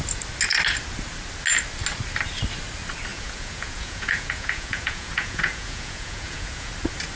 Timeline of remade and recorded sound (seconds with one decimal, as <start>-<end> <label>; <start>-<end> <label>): 0.0-3.1 recorded; 3.1-6.7 remade; 6.7-7.2 recorded